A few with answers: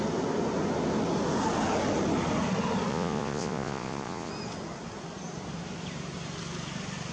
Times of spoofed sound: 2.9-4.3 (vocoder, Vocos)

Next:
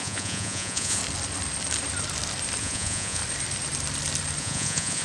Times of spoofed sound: 0.0-1.0 (vocoder, Vocos); 2.6-3.2; 4.4-5.0